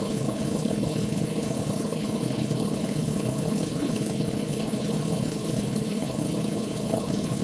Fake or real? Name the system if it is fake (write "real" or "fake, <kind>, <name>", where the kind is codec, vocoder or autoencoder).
fake, codec, HILCodec